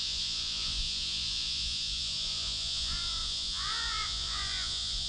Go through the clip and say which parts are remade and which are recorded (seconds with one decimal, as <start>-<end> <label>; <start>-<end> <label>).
0.0-5.1 remade